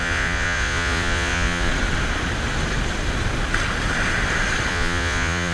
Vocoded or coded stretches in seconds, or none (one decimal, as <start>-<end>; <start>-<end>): 0.0-1.7; 4.7-5.5